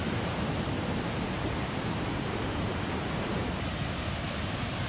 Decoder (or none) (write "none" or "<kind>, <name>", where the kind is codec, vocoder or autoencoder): vocoder, BigVGAN v2